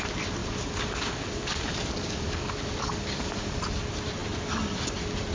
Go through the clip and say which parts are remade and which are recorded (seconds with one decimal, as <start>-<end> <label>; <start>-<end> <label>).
0.0-0.4 recorded; 0.4-3.6 remade; 3.6-5.3 recorded